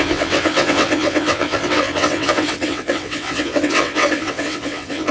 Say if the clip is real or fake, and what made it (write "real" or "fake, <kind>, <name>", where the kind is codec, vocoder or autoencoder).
fake, vocoder, WaveNeXt